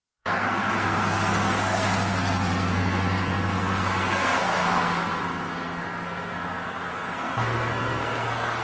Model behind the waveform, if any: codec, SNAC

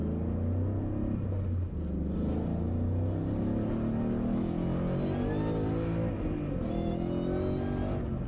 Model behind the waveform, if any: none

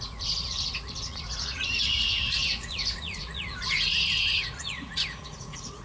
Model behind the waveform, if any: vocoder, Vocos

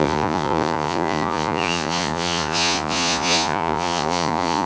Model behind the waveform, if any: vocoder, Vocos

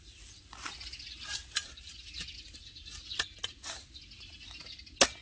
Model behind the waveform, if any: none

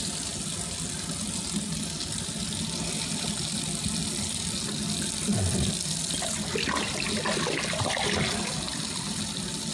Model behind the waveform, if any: none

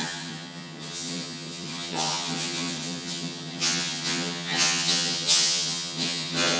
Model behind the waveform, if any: vocoder, HiFi-GAN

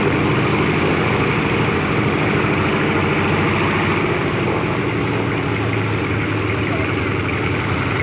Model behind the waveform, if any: none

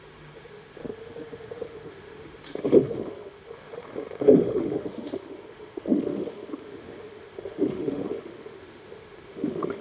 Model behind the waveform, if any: autoencoder, DAC-VAE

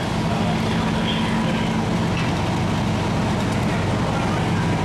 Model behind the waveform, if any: none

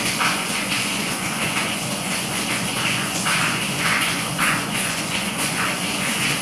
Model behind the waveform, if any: vocoder, Vocos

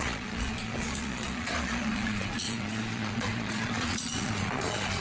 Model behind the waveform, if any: vocoder, Vocos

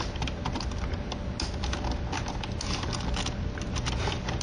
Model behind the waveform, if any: none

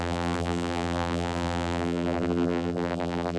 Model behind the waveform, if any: vocoder, BigVGAN v2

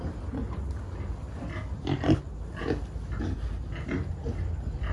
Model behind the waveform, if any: none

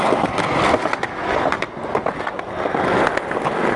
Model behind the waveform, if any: none